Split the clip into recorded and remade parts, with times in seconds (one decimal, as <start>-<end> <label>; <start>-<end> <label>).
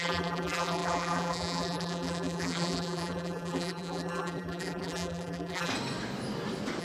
0.0-5.7 remade; 5.7-6.8 recorded